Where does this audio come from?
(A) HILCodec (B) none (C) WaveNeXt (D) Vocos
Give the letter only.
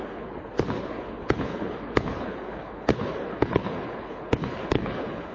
A